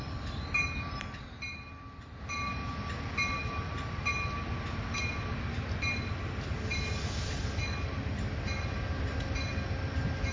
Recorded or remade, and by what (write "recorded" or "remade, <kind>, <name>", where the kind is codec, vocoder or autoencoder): recorded